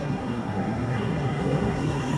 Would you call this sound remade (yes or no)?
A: yes